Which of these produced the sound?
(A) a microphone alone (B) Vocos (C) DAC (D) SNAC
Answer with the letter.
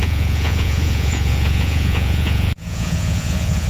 B